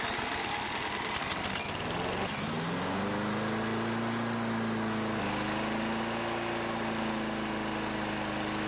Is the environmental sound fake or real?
real